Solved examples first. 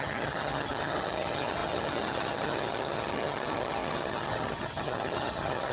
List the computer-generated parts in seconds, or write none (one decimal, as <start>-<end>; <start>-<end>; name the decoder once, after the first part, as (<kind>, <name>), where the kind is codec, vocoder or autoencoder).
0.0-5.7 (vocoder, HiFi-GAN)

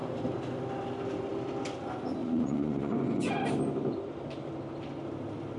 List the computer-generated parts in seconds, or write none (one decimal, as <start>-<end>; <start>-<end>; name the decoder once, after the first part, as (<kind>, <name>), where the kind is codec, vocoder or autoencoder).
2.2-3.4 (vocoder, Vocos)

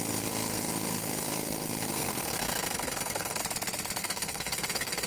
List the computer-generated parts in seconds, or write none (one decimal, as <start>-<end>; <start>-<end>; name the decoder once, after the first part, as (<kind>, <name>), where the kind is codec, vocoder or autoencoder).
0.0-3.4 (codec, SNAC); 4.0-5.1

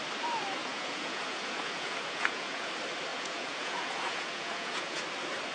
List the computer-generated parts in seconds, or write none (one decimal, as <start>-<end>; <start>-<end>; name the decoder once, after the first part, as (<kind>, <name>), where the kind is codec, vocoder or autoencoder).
0.6-2.7 (vocoder, Vocos); 3.1-5.0

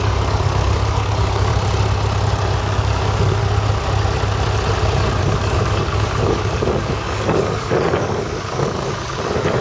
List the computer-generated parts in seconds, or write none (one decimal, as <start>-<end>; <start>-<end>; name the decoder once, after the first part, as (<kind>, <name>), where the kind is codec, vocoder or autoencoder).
0.0-1.5 (codec, DAC); 2.6-3.4; 5.2-9.6

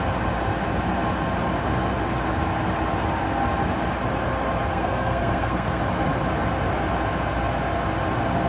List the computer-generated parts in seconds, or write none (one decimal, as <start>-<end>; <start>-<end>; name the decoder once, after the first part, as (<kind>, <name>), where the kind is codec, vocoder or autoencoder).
4.7-5.8 (codec, SNAC)

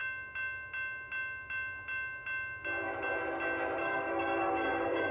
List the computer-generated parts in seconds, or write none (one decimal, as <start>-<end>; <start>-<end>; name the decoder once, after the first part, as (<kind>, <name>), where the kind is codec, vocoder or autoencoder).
3.8-5.1 (codec, SNAC)